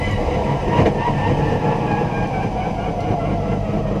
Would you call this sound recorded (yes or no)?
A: yes